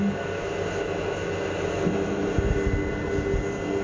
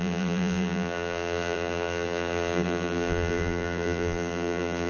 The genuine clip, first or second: first